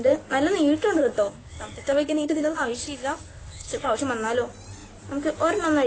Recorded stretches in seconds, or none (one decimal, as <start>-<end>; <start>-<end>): 0.0-1.0; 4.0-5.9